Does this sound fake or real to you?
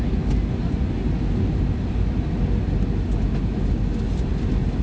real